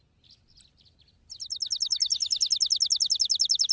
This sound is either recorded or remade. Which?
recorded